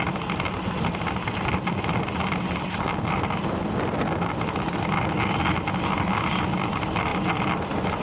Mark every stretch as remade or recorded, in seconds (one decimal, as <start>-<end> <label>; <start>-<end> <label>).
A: 0.0-8.0 recorded